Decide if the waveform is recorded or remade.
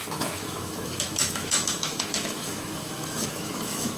remade